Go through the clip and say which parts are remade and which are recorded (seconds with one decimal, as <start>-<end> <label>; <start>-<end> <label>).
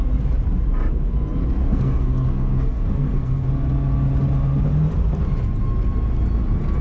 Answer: 0.0-1.6 recorded; 1.6-3.5 remade; 3.5-6.8 recorded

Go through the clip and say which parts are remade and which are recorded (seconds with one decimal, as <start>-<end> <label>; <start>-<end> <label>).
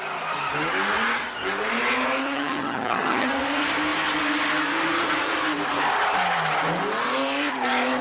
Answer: 0.0-2.2 recorded; 2.2-3.3 remade; 3.3-8.0 recorded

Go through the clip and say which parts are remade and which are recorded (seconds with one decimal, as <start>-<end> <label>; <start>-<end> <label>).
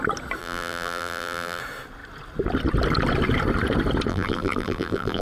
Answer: 0.0-0.4 recorded; 0.4-1.6 remade; 1.6-4.1 recorded; 4.1-5.2 remade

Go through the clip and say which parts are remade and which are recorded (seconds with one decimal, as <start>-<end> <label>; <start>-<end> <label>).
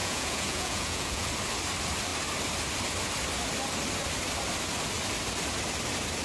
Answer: 0.0-1.3 remade; 1.3-6.2 recorded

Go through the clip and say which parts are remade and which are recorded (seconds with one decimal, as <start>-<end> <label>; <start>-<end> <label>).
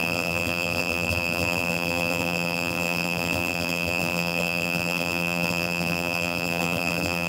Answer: 0.0-7.3 remade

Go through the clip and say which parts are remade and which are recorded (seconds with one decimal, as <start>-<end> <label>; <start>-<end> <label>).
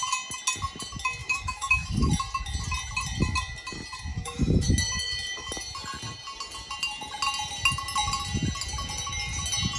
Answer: 0.0-1.2 recorded; 1.2-2.1 remade; 2.1-4.1 recorded; 4.1-4.7 remade; 4.7-9.8 recorded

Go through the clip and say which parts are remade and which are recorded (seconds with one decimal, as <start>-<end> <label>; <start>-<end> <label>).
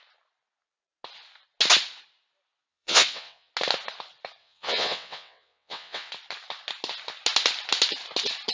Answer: 0.0-2.7 recorded; 2.7-3.5 remade; 3.5-4.4 recorded; 4.4-6.1 remade; 6.1-8.5 recorded